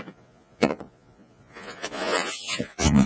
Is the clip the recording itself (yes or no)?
no